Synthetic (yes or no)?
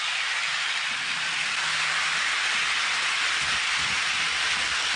no